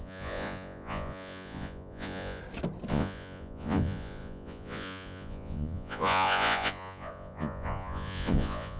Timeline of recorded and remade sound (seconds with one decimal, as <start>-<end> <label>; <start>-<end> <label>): 0.0-2.4 remade; 2.4-2.9 recorded; 2.9-8.8 remade